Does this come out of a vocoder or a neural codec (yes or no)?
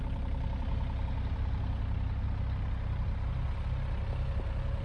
no